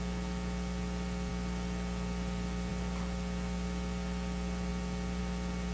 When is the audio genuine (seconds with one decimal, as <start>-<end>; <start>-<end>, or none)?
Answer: 0.0-5.7